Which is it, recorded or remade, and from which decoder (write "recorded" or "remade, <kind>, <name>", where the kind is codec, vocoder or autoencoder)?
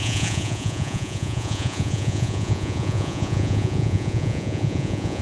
remade, vocoder, Vocos